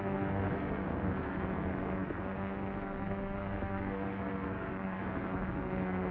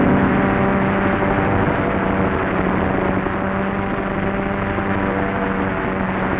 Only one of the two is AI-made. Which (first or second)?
first